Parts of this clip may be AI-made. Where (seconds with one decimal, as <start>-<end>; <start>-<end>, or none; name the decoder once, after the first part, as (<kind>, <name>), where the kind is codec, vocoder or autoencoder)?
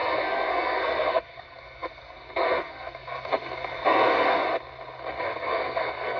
0.0-4.4 (codec, SNAC); 5.2-6.2